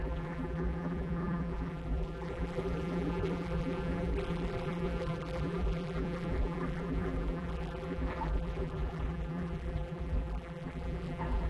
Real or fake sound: fake